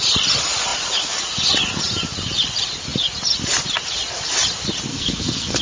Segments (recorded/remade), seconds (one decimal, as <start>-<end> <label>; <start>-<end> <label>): 0.0-4.9 recorded; 4.9-5.6 remade